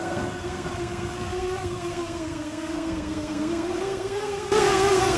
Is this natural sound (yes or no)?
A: no